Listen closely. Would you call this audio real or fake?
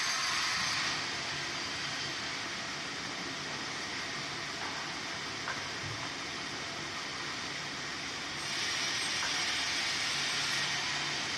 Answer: real